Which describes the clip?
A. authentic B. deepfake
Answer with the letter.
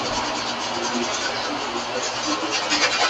A